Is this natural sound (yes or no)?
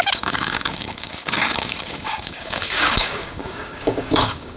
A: no